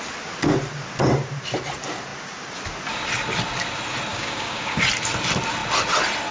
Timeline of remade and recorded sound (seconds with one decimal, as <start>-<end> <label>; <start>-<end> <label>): 0.0-4.1 recorded; 4.1-4.8 remade; 4.8-6.3 recorded